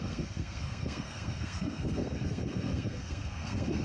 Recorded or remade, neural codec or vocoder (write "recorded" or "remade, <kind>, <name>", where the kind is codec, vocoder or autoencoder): remade, codec, SNAC